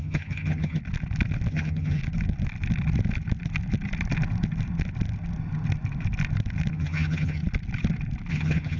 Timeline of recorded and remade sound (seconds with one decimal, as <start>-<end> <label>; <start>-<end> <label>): 0.0-0.8 remade; 0.8-1.5 recorded; 1.5-2.0 remade; 2.0-6.7 recorded; 6.7-7.4 remade; 7.4-8.3 recorded; 8.3-8.8 remade